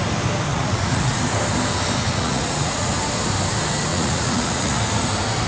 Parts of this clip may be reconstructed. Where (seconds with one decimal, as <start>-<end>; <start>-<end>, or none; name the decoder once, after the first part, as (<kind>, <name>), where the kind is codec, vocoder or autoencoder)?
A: 0.5-1.2 (vocoder, Vocos); 2.0-2.9; 3.9-4.8